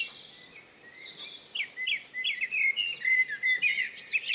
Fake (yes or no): no